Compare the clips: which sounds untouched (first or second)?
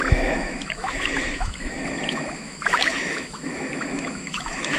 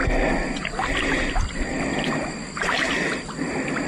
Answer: second